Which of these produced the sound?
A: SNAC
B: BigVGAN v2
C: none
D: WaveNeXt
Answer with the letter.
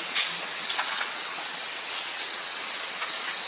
D